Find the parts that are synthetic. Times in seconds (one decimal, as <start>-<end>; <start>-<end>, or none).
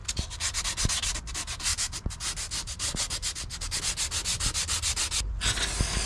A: none